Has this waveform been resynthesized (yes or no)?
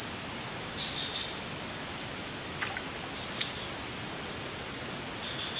no